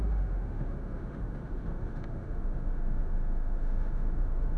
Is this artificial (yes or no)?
yes